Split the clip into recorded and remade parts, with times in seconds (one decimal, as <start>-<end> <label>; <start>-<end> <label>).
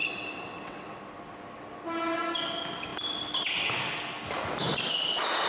0.0-1.0 remade; 1.0-5.5 recorded